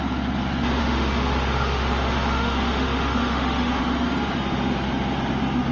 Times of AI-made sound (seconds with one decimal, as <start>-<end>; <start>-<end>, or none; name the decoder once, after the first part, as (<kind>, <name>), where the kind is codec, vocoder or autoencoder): 0.8-3.8 (autoencoder, DAC-VAE)